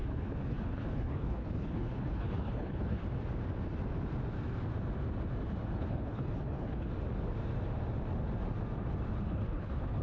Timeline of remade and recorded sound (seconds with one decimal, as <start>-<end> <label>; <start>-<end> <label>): 0.0-3.0 remade; 3.0-5.8 recorded; 5.8-6.9 remade; 6.9-9.2 recorded; 9.2-10.0 remade